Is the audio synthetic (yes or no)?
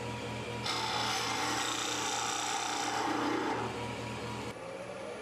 no